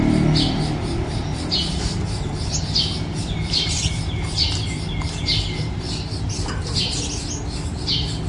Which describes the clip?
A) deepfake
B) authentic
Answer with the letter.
B